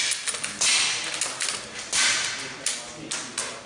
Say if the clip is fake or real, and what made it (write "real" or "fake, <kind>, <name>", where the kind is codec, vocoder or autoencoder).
real